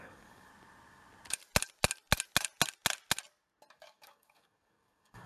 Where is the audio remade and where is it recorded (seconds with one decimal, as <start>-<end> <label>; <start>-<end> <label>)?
0.0-0.5 remade; 0.5-3.7 recorded; 3.7-5.3 remade